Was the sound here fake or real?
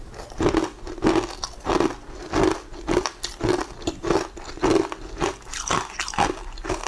real